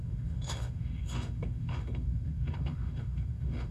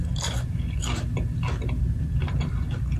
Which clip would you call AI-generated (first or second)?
first